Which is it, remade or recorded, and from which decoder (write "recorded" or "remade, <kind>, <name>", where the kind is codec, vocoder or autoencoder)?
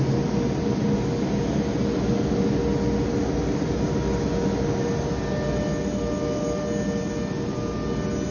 recorded